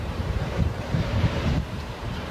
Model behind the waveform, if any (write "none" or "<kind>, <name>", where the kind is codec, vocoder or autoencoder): vocoder, BigVGAN v2